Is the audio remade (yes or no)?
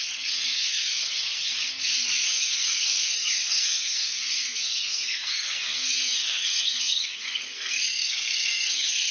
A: yes